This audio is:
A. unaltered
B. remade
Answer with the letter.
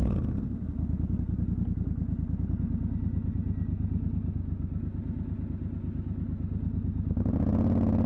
A